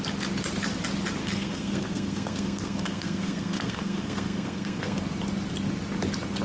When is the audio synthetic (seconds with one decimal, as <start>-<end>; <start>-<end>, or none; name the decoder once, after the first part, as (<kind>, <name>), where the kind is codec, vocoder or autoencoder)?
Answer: 1.2-5.0 (codec, SNAC)